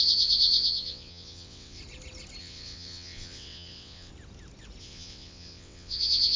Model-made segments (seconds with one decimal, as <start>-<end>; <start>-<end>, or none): 0.0-1.8; 2.4-4.1; 4.8-6.4